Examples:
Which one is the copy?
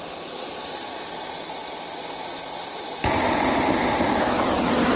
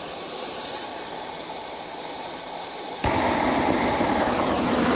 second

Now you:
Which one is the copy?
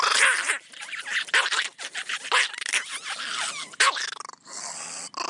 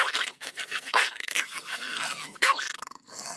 second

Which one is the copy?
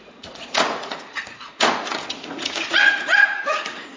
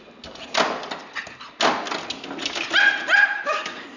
first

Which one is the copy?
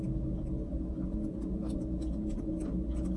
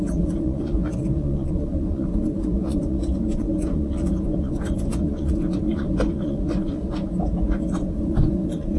second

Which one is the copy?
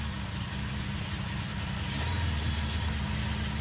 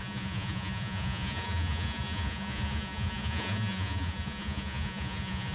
second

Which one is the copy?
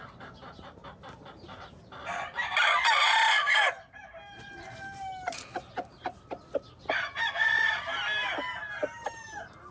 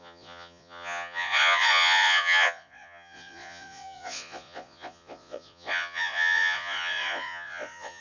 second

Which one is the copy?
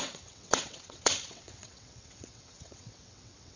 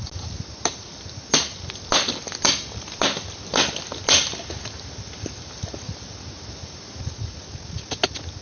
first